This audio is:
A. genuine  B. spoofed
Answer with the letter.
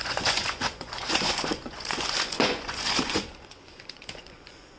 B